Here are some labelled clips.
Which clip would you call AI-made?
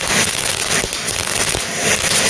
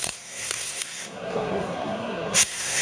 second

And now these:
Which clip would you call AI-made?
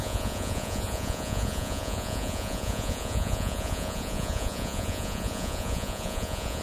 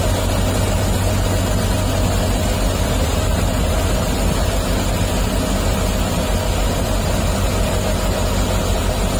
first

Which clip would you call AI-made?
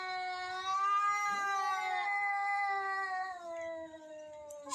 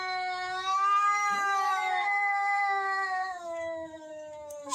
second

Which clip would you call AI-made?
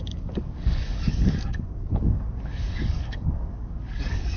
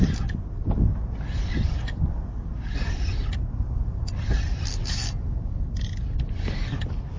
first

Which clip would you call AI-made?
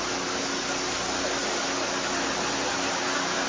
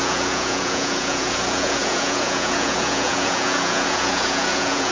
second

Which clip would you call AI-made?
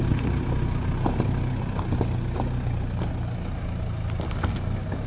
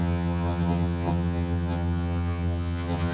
second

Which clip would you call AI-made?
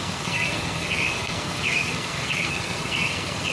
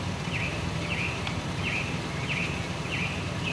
first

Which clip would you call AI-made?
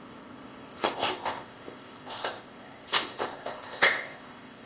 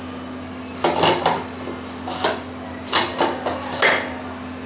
first